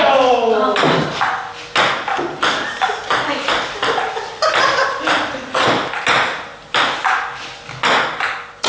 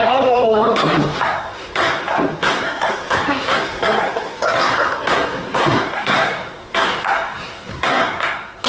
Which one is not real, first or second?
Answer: second